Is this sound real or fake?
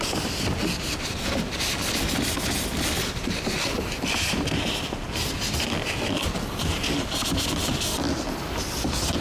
real